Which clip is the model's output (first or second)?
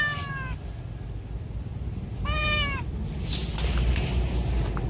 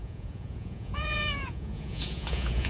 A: second